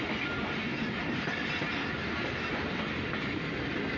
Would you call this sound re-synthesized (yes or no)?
no